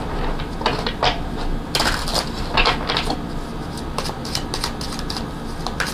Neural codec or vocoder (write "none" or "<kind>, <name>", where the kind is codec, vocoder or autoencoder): none